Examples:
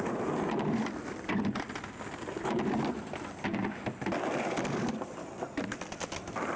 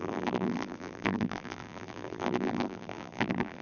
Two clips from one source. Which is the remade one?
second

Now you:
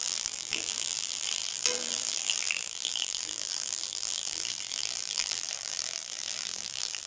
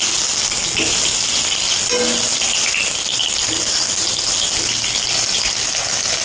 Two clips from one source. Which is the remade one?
first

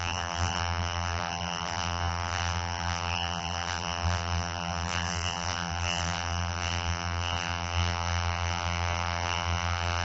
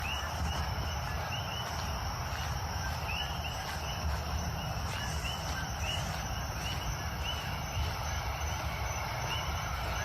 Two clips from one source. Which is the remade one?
first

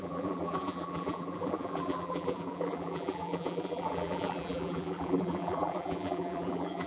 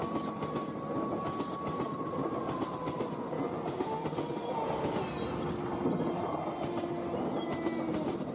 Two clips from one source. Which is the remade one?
first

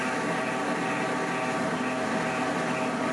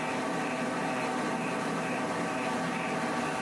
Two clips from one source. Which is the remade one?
second